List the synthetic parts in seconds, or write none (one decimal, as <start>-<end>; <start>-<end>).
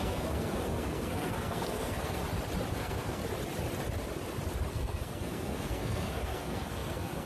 0.0-2.2; 2.7-3.2; 4.7-7.3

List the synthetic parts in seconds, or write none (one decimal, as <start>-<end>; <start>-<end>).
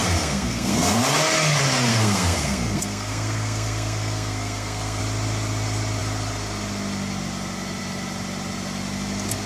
0.0-1.0; 1.9-5.0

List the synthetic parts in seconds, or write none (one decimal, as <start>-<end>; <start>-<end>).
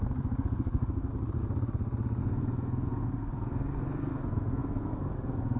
0.0-1.1; 2.2-5.6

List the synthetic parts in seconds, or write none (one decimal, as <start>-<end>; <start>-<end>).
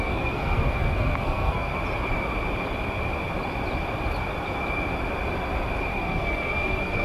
0.0-1.7; 5.9-7.0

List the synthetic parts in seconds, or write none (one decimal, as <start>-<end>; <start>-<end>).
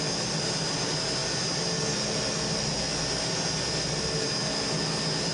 none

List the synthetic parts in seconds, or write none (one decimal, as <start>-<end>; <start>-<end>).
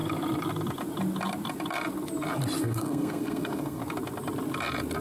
2.6-3.8